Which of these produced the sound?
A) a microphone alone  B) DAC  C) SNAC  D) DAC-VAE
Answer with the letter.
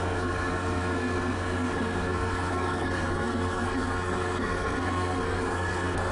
C